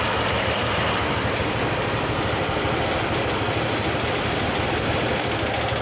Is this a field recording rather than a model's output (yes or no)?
yes